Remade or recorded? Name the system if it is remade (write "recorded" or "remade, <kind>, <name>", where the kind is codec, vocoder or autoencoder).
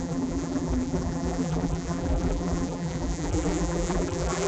remade, vocoder, BigVGAN v2